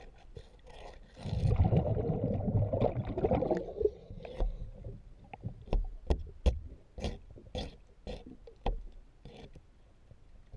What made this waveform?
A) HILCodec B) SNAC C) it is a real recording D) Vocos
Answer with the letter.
C